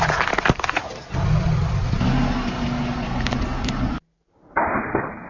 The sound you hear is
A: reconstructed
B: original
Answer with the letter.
B